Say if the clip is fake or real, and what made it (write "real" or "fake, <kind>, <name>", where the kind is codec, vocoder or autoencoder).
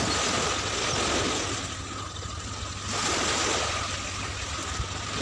real